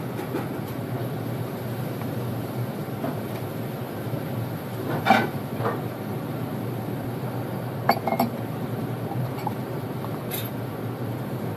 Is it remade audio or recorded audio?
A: recorded